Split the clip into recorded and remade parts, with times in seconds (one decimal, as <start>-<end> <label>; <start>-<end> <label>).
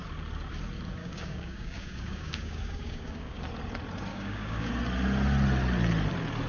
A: 0.0-1.0 recorded; 1.0-3.4 remade; 3.4-4.1 recorded; 4.1-4.7 remade; 4.7-6.5 recorded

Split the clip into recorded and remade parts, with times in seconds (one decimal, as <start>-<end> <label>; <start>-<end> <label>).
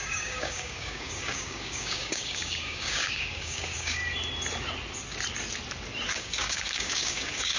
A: 0.0-4.0 remade; 4.0-6.1 recorded; 6.1-7.6 remade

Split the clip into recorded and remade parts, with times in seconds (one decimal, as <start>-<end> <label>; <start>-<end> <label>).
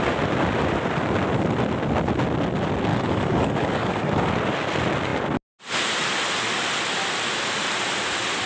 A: 0.0-2.9 recorded; 2.9-4.2 remade; 4.2-8.5 recorded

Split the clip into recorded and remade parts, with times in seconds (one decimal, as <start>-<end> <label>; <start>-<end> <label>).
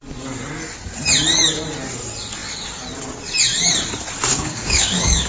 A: 0.0-4.3 recorded; 4.3-5.3 remade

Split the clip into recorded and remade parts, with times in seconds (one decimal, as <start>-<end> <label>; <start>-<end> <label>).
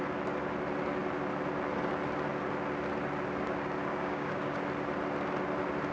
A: 0.0-3.9 recorded; 3.9-4.6 remade; 4.6-5.9 recorded